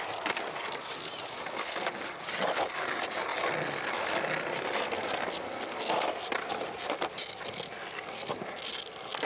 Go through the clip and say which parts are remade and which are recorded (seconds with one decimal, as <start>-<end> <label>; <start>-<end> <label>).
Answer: 0.0-9.2 recorded